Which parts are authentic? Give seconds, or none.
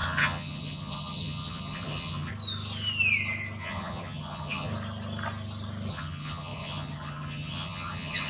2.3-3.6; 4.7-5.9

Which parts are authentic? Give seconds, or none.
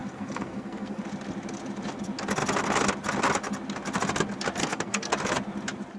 1.0-4.6; 5.1-6.0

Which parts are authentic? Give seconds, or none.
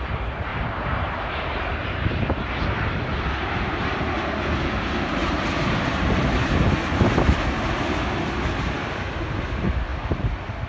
0.0-0.5; 2.1-3.1; 3.9-5.2; 6.7-10.7